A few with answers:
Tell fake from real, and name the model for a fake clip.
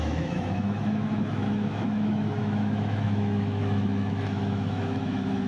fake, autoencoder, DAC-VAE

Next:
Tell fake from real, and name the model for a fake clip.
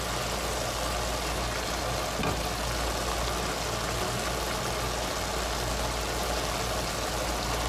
real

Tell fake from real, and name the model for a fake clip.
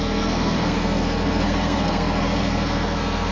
fake, codec, SNAC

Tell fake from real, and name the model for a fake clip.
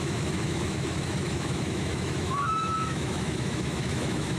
fake, autoencoder, DAC-VAE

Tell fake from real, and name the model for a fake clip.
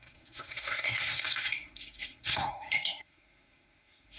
fake, codec, SNAC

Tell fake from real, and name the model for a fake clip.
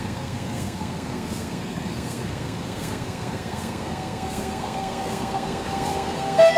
fake, codec, SNAC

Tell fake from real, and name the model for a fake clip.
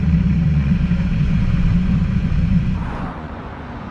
fake, vocoder, Vocos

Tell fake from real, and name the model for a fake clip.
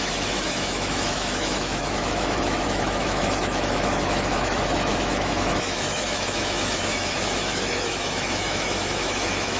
fake, autoencoder, DAC-VAE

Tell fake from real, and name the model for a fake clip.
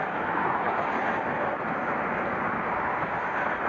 real